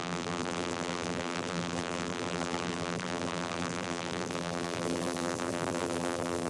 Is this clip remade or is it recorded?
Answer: remade